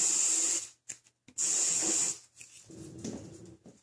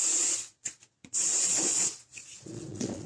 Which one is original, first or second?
first